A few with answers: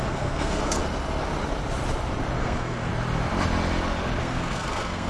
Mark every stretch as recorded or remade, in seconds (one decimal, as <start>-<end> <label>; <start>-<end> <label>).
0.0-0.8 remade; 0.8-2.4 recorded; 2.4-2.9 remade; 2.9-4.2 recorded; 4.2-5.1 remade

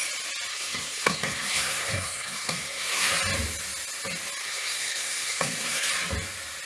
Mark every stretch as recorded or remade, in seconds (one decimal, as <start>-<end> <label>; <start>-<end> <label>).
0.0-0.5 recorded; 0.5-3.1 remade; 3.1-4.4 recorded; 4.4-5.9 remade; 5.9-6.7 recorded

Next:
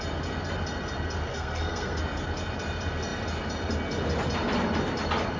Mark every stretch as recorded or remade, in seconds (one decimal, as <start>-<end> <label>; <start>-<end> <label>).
0.0-1.3 recorded; 1.3-2.0 remade; 2.0-5.4 recorded